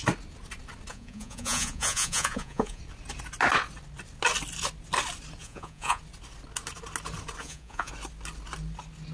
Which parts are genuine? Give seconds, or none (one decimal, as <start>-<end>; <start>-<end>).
0.0-0.9; 2.8-5.4; 6.0-7.4; 7.9-9.1

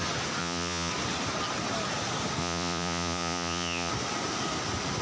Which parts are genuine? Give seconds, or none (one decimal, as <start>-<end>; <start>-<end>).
0.0-0.4; 0.9-2.4; 3.9-5.0

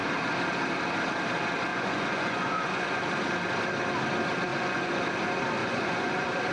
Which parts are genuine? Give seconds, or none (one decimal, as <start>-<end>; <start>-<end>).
0.0-1.7; 3.0-4.5; 5.0-5.6; 6.1-6.5

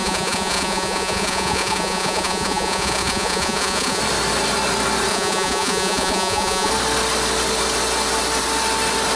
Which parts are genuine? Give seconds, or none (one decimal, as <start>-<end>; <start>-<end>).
4.0-5.1; 6.7-9.2

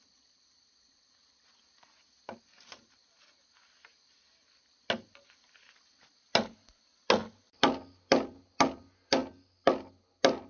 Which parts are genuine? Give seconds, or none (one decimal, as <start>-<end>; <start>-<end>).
0.0-10.5

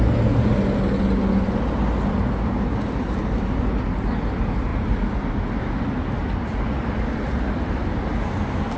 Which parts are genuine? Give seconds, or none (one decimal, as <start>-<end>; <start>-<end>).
0.0-8.8

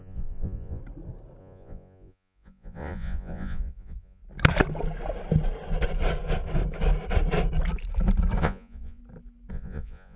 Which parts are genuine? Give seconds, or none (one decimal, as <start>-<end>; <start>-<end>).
0.8-1.4; 4.2-8.4; 9.0-9.5

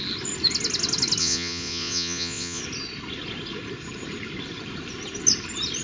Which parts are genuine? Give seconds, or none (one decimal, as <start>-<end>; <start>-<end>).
0.0-1.2; 2.6-5.8